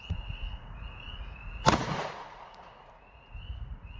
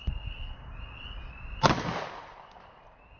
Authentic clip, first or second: second